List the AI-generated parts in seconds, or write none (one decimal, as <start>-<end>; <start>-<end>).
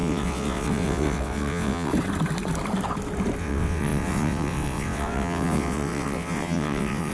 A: 0.0-1.9; 3.4-7.1